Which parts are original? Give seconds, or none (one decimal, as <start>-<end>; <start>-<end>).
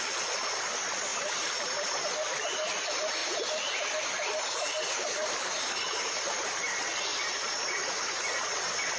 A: 0.0-1.1; 2.1-5.2; 6.1-7.1; 8.3-9.0